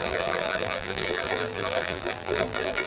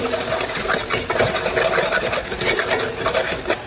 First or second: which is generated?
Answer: first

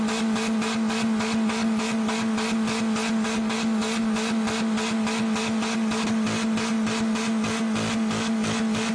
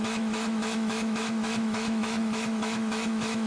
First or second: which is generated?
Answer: second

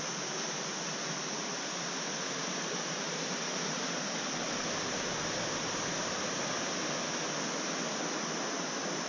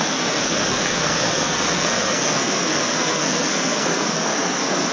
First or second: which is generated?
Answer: second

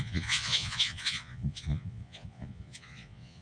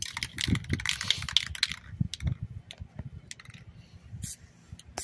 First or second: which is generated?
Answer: first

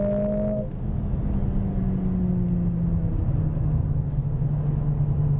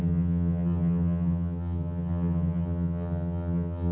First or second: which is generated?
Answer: second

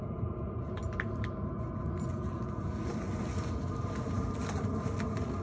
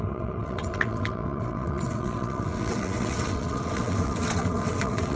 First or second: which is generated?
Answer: second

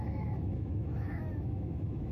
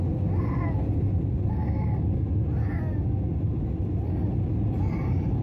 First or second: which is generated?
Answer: first